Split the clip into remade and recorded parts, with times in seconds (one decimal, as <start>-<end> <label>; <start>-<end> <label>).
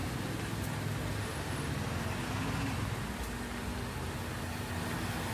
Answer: 0.0-1.2 recorded; 1.2-1.7 remade; 1.7-5.3 recorded